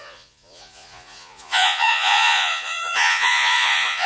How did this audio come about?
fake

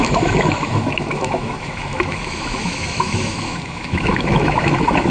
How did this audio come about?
fake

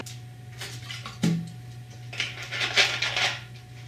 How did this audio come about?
real